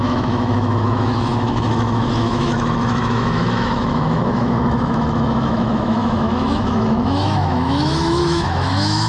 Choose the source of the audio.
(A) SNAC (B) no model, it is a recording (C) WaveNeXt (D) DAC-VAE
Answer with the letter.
D